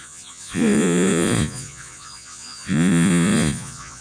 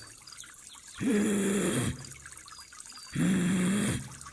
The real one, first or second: second